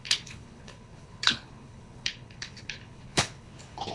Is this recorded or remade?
remade